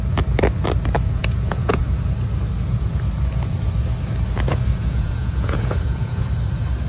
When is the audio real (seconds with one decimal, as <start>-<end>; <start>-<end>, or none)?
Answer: 0.0-1.2; 1.8-4.8; 6.2-6.9